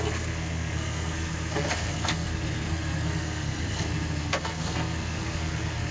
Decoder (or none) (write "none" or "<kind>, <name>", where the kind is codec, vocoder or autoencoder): codec, SNAC